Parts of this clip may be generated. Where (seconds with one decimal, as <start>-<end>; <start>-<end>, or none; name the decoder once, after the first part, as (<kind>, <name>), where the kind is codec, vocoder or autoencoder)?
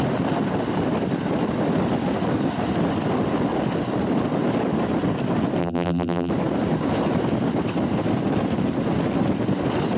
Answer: 5.6-6.3 (vocoder, BigVGAN v2)